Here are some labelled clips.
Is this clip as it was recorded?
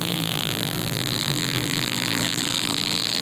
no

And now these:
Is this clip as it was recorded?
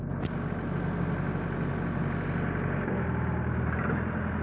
yes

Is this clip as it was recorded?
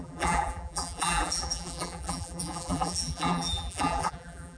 no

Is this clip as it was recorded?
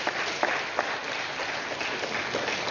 yes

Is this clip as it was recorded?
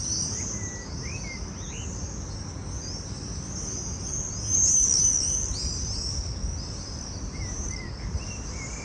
yes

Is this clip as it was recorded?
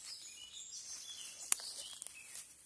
yes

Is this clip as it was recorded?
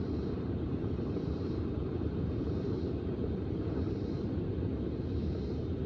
no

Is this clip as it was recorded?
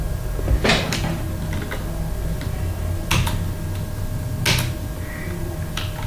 yes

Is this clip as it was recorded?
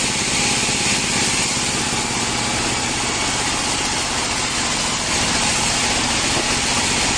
yes